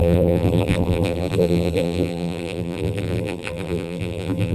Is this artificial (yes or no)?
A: yes